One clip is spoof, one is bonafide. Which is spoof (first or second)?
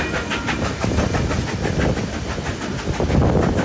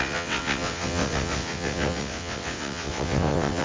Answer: second